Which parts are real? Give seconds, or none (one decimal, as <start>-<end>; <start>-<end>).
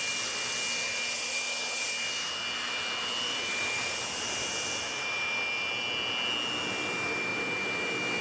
0.0-8.2